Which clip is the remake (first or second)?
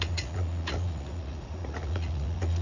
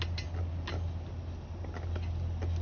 first